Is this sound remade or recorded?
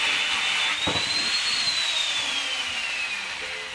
recorded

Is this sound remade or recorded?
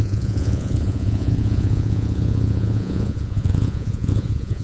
remade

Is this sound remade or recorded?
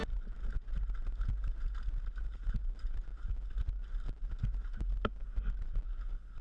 recorded